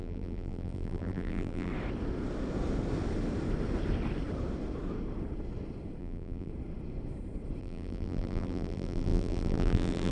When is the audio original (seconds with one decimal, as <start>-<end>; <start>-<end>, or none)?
1.7-6.0; 6.5-7.6